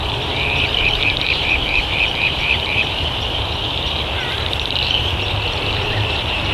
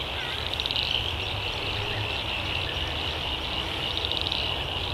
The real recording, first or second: second